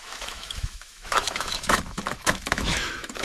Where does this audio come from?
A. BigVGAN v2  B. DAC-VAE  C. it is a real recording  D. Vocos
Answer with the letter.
B